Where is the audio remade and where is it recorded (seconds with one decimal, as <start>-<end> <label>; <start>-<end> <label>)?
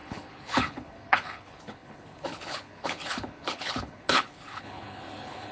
0.0-5.5 remade